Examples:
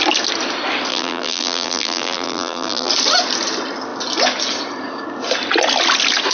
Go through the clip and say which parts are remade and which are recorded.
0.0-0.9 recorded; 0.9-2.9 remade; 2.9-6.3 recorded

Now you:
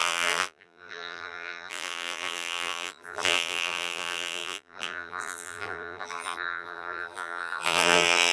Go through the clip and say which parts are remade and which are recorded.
0.0-8.3 remade

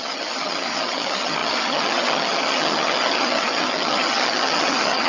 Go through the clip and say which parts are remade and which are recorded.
0.0-5.1 remade

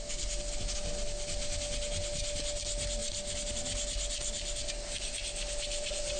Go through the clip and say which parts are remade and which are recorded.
0.0-6.2 recorded